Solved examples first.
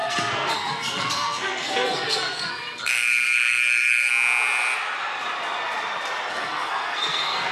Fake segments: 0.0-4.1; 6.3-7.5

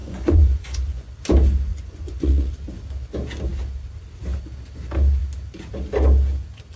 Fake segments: 0.0-1.1; 1.7-2.5

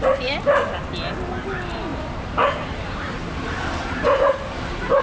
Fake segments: 1.9-5.0